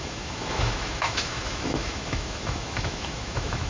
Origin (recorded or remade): remade